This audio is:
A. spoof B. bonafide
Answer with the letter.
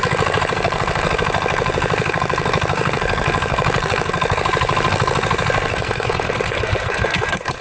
A